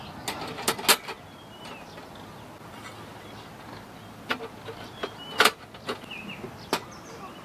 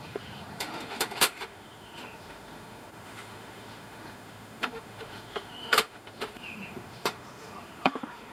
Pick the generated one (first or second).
second